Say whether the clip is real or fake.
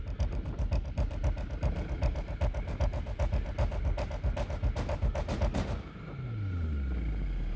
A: real